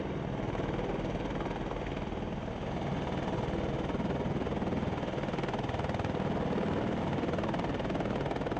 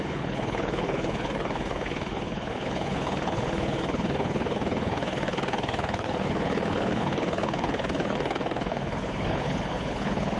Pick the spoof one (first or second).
second